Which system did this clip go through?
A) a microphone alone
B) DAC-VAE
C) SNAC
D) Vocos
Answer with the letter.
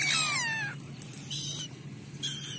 A